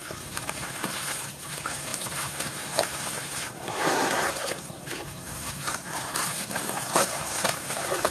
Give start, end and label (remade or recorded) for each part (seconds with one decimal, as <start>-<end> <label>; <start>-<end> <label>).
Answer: 0.0-8.1 remade

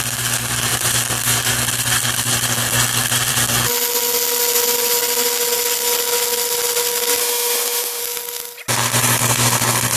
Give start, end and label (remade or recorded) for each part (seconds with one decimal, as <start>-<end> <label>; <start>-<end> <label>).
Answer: 0.0-7.2 recorded; 7.2-8.0 remade; 8.0-10.0 recorded

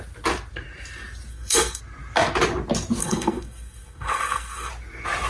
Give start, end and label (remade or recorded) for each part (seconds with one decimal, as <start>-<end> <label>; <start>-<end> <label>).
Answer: 0.0-1.3 recorded; 1.3-1.8 remade; 1.8-3.0 recorded; 3.0-4.7 remade; 4.7-5.3 recorded

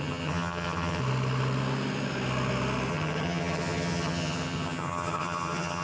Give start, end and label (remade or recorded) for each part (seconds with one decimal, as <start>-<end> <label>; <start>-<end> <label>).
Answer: 0.0-1.0 remade; 1.0-2.9 recorded; 2.9-5.8 remade